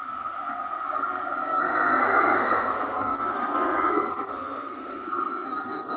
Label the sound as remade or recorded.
remade